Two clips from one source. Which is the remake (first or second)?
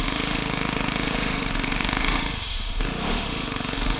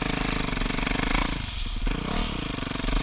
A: first